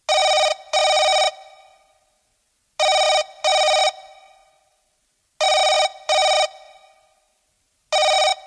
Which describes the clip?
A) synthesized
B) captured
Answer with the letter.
B